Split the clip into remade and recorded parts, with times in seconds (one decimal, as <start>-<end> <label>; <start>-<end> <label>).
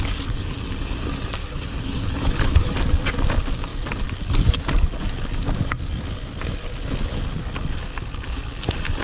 0.0-1.4 recorded; 1.4-2.7 remade; 2.7-9.0 recorded